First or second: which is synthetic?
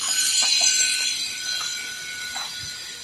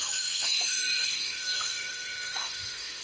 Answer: second